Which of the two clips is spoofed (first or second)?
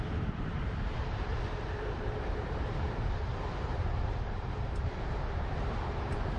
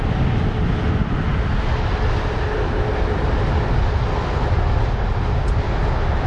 first